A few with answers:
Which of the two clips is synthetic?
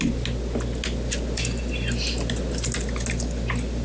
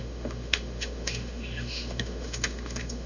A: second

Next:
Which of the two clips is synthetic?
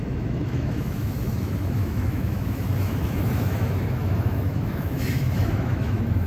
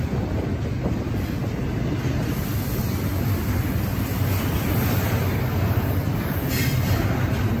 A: first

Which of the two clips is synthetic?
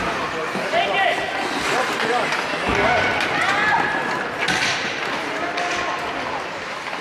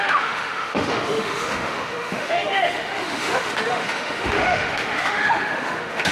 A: second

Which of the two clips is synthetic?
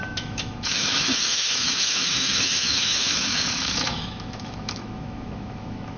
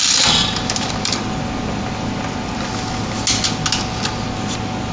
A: first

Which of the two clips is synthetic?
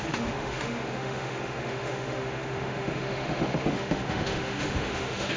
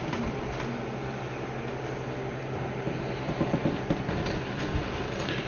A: first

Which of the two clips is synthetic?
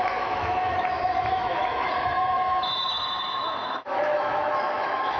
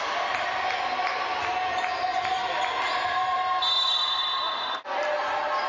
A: first